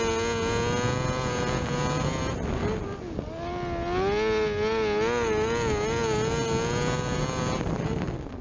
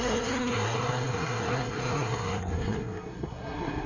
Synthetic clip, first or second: second